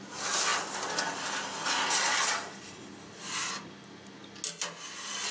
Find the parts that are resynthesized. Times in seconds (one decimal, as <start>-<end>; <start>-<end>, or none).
none